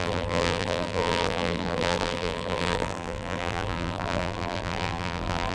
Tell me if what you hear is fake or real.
fake